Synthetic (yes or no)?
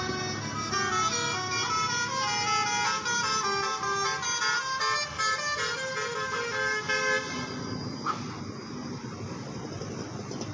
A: no